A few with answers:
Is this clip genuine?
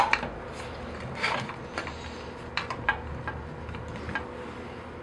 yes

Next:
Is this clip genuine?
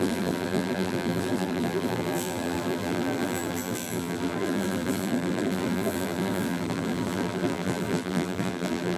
no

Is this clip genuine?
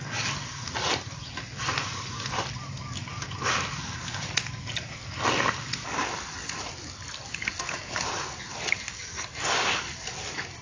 yes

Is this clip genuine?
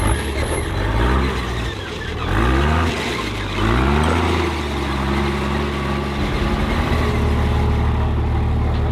yes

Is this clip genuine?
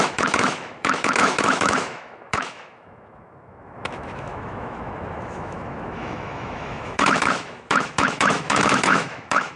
no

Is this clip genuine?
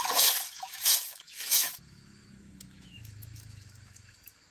no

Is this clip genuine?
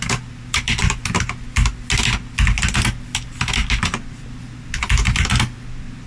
yes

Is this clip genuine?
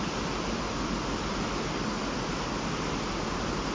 yes